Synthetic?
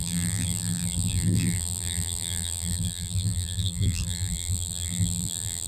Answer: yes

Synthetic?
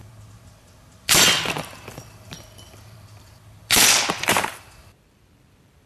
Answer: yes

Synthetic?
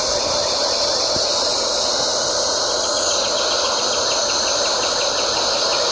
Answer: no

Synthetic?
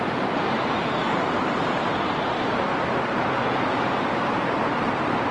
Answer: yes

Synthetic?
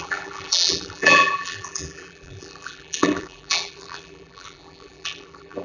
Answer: yes